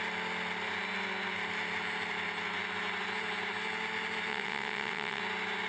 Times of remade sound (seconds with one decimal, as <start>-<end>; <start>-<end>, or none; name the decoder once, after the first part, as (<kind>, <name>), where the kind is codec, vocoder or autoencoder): 4.3-5.2 (vocoder, WaveNeXt)